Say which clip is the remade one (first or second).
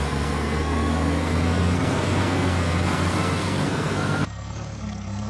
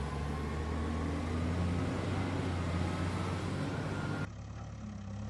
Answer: first